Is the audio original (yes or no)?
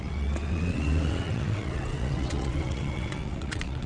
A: no